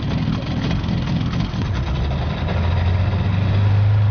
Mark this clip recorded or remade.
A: recorded